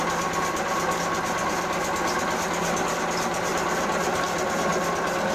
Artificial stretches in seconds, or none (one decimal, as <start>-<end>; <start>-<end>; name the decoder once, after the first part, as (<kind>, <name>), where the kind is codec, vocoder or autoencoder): none